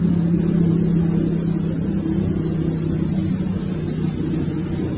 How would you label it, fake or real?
real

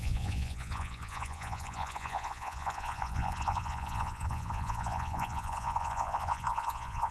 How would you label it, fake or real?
fake